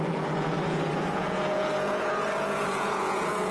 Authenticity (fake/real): fake